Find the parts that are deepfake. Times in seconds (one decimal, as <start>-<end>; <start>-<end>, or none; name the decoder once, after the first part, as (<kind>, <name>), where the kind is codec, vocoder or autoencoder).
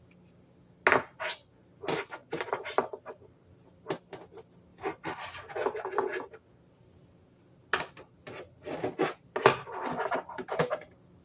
2.2-3.7 (vocoder, BigVGAN v2)